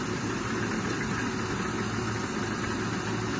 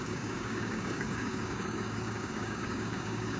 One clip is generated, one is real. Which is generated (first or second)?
second